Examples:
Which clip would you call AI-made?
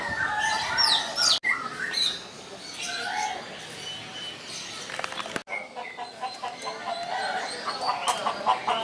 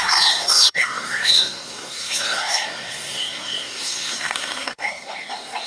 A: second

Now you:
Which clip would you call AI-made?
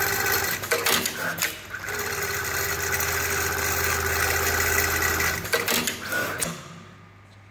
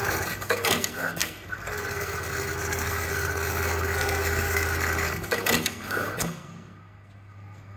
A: second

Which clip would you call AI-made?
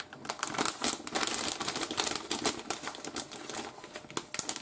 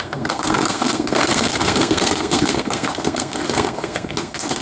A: second